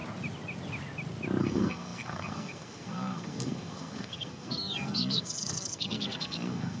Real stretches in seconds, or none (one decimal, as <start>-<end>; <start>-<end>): 0.0-1.4